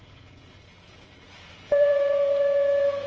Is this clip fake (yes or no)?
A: yes